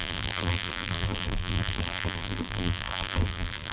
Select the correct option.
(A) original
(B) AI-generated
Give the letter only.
B